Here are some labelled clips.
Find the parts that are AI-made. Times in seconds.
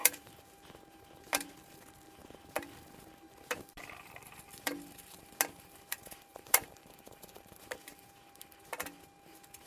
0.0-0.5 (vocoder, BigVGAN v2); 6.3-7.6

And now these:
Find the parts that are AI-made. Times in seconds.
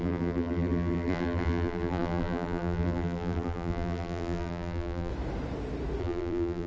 0.0-5.1 (vocoder, BigVGAN v2); 6.0-6.7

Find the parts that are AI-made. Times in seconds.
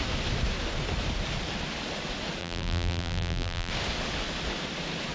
2.4-3.7 (vocoder, BigVGAN v2)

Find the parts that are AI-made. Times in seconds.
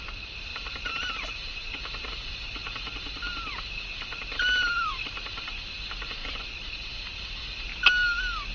0.0-7.7 (vocoder, BigVGAN v2)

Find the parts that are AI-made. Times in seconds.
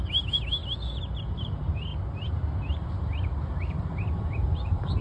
0.0-0.6 (vocoder, BigVGAN v2); 1.2-1.9; 2.9-5.0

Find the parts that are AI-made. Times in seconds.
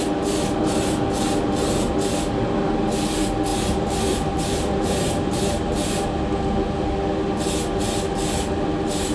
3.5-6.2 (vocoder, BigVGAN v2)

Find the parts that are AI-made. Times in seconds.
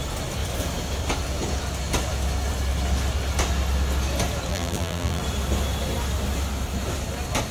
4.5-5.2 (vocoder, BigVGAN v2)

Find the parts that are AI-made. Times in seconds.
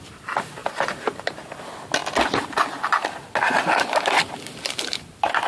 0.6-1.6 (vocoder, BigVGAN v2)